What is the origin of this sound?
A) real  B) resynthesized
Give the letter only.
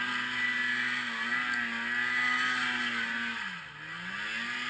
A